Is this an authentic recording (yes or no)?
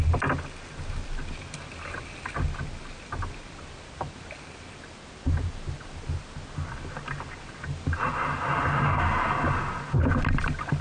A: yes